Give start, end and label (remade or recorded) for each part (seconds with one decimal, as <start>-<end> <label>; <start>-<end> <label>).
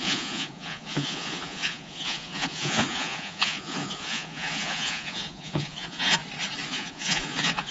0.0-6.2 remade; 6.2-6.7 recorded; 6.7-7.7 remade